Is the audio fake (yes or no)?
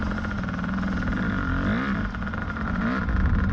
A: no